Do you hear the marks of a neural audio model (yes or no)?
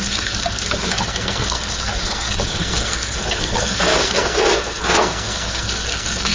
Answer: yes